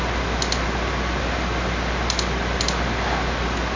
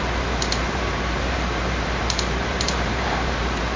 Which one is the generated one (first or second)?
second